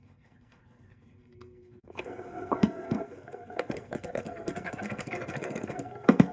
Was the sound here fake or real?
fake